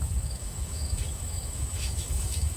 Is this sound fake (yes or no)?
yes